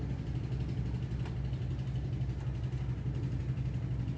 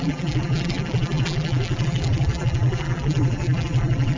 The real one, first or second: first